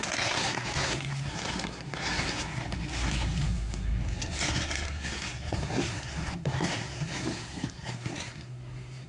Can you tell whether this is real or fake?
fake